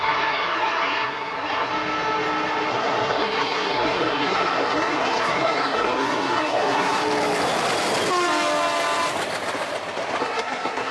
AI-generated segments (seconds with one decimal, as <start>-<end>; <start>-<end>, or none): 0.0-1.7; 2.7-7.0; 10.2-10.9